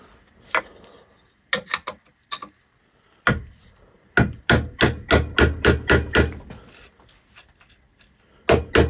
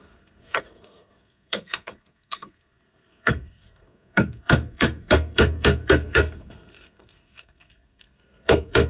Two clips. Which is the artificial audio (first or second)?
second